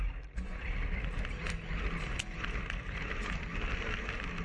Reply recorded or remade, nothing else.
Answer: recorded